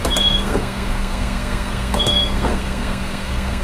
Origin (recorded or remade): remade